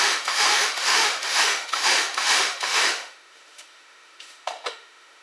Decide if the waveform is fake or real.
fake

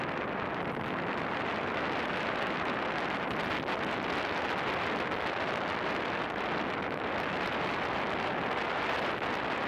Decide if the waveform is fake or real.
real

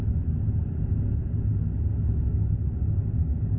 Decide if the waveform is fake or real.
real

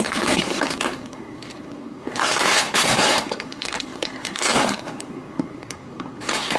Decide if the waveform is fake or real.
fake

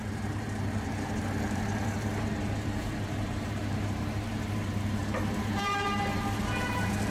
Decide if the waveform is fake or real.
fake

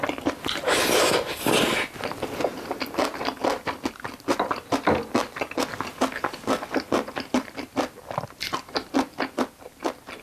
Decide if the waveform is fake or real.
real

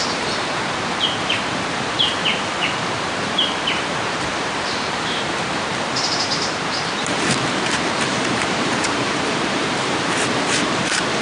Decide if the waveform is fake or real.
fake